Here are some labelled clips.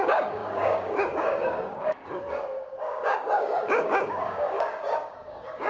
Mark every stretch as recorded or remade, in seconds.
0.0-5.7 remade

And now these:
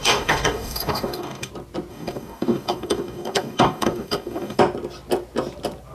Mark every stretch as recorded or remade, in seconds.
0.0-1.5 remade; 1.5-1.9 recorded; 1.9-4.6 remade; 4.6-5.9 recorded

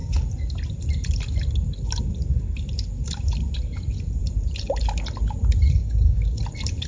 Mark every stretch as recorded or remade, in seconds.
0.0-5.8 recorded; 5.8-6.4 remade; 6.4-6.9 recorded

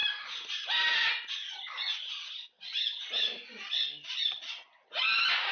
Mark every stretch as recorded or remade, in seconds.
0.0-5.5 recorded

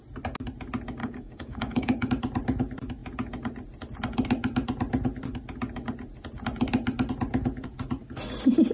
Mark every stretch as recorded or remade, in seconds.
0.0-1.0 recorded; 1.0-2.1 remade; 2.1-8.7 recorded

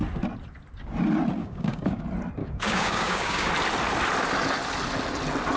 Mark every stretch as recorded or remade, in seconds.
0.0-1.4 recorded; 1.4-2.0 remade; 2.0-2.4 recorded; 2.4-3.5 remade; 3.5-5.6 recorded

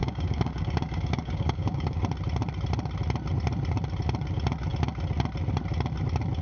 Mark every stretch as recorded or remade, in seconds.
0.0-2.0 remade; 2.0-6.4 recorded